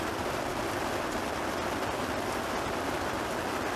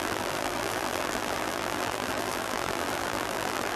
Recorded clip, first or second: first